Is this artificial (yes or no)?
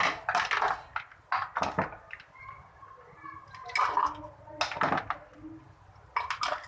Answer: no